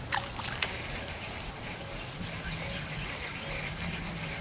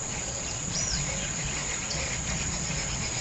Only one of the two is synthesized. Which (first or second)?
second